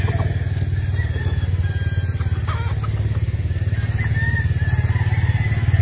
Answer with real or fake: real